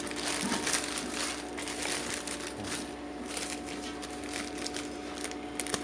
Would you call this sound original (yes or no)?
yes